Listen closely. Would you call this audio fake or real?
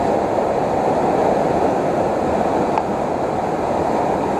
real